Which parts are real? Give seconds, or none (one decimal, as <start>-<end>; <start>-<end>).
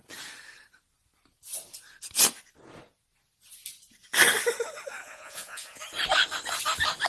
0.0-5.0; 5.8-7.1